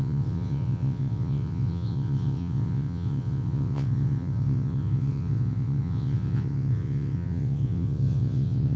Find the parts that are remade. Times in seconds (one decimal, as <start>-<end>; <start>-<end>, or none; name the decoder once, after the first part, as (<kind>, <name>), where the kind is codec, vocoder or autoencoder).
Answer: 0.0-8.8 (vocoder, WaveNeXt)